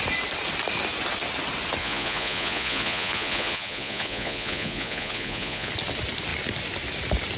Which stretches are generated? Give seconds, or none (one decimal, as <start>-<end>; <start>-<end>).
1.8-5.7